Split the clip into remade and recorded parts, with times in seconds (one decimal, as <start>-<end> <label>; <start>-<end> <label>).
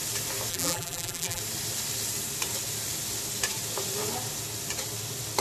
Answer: 0.0-0.5 recorded; 0.5-1.4 remade; 1.4-5.4 recorded